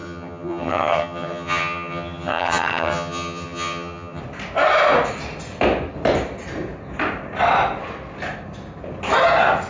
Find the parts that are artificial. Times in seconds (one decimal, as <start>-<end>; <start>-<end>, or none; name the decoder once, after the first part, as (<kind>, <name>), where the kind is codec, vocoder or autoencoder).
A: 0.0-4.2 (vocoder, HiFi-GAN)